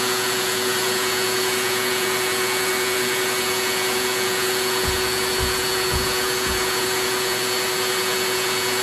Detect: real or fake fake